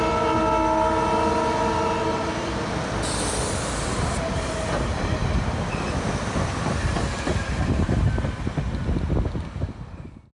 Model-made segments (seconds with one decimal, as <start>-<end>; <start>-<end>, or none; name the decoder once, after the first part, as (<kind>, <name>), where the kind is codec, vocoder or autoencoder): none